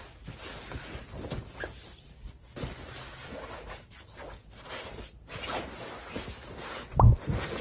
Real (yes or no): yes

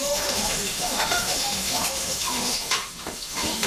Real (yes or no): no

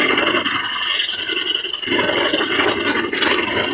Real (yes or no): yes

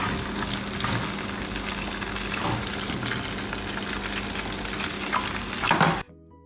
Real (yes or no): yes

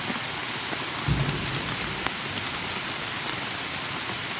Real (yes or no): yes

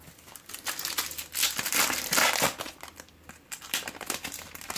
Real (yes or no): yes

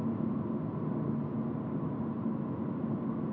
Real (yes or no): yes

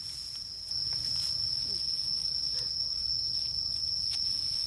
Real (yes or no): yes